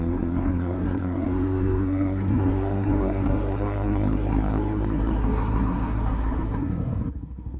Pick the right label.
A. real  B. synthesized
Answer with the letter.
B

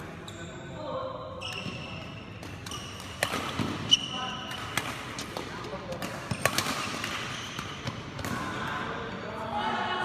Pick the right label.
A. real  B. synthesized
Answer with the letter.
A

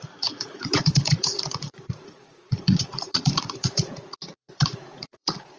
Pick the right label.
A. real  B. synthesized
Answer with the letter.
B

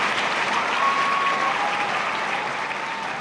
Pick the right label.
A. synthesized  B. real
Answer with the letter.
B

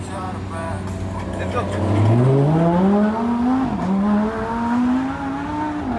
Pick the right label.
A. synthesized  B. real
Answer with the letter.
B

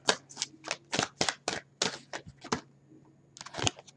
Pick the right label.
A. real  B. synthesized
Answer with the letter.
A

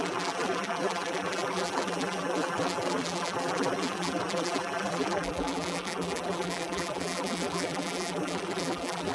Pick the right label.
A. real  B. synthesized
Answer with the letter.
B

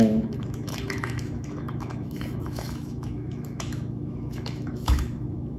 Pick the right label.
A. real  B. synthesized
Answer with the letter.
B